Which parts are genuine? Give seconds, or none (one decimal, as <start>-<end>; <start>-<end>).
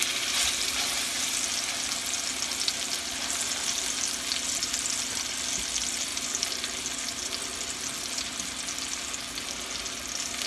0.0-10.5